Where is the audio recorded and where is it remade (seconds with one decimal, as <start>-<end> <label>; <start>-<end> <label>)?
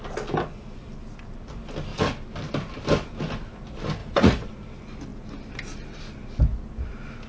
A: 0.0-4.0 recorded; 4.0-4.5 remade; 4.5-7.3 recorded